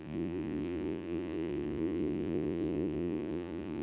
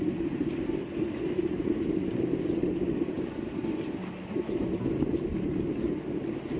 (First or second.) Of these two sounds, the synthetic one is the first